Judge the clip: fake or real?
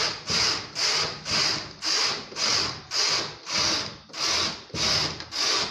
real